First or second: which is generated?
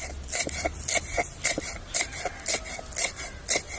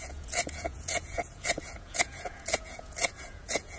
second